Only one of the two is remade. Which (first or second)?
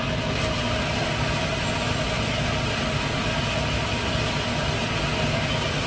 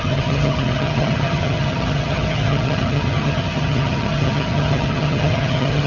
second